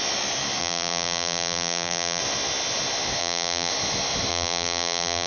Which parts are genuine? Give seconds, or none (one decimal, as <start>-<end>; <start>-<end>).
0.0-0.6; 2.2-3.2; 3.7-4.3